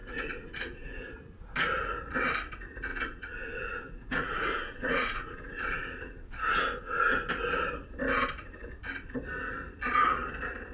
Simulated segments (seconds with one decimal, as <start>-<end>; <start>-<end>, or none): 0.0-1.1; 2.9-7.3